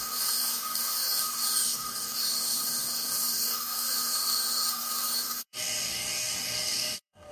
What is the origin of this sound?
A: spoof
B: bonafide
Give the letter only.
A